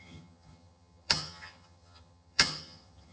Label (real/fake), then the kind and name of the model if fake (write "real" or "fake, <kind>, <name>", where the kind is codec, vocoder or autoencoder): fake, vocoder, HiFi-GAN